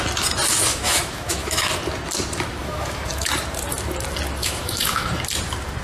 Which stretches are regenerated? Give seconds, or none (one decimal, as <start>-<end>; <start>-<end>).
0.7-1.7; 2.6-3.3; 4.4-5.1